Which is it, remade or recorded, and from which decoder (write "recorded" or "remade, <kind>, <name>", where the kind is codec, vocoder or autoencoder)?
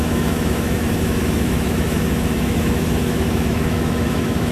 remade, autoencoder, DAC-VAE